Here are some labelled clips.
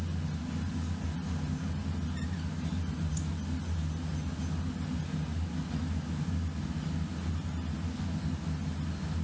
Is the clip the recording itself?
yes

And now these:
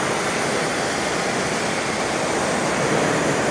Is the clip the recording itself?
yes